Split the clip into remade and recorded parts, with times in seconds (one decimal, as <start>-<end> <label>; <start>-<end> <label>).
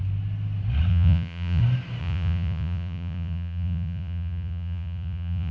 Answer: 0.0-0.9 recorded; 0.9-1.6 remade; 1.6-2.0 recorded; 2.0-5.5 remade